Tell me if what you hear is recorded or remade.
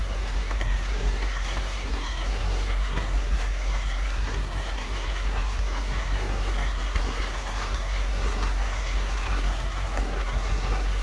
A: remade